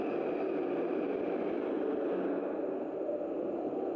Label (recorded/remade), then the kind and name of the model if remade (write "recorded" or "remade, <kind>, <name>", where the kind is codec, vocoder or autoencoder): recorded